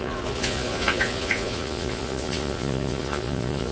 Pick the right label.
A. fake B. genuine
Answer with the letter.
A